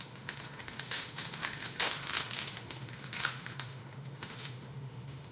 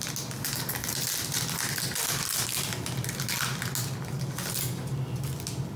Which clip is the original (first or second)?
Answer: second